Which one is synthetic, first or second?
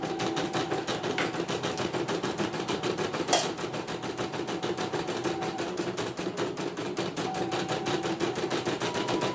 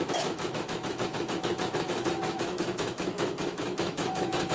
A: second